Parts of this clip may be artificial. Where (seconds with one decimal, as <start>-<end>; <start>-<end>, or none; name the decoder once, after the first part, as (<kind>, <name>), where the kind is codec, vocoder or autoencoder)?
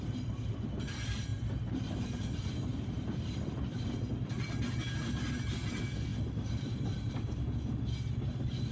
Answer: 1.3-4.0 (vocoder, BigVGAN v2)